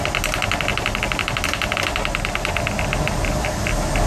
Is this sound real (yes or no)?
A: yes